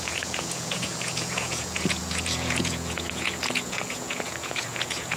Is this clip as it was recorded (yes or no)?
no